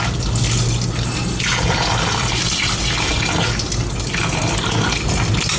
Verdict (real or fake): real